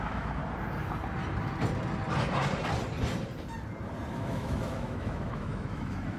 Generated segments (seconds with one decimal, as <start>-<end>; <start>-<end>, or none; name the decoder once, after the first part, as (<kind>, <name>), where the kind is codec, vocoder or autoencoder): 0.0-0.4 (autoencoder, DAC-VAE); 4.1-6.2